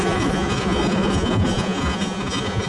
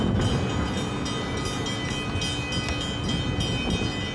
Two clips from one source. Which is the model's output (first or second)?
first